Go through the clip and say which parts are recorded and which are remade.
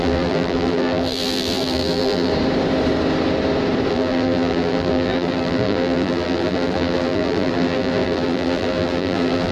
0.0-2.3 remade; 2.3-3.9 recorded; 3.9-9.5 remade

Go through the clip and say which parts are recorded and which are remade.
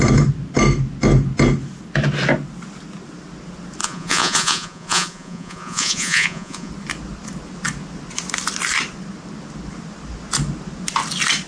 0.0-3.8 recorded; 3.8-6.7 remade; 6.7-11.5 recorded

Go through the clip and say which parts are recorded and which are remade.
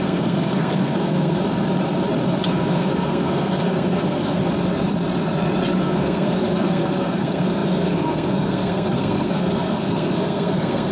0.0-1.4 remade; 1.4-2.5 recorded; 2.5-4.4 remade; 4.4-5.8 recorded; 5.8-10.9 remade